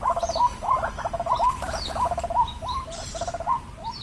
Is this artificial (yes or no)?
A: yes